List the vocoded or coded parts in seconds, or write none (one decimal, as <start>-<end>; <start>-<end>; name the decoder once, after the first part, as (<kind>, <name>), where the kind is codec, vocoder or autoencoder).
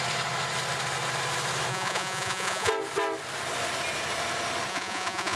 1.7-2.7 (vocoder, Vocos); 4.7-5.4